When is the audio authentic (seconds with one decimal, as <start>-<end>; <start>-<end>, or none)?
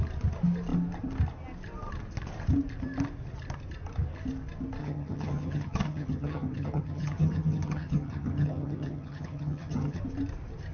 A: 0.0-4.8; 10.0-10.7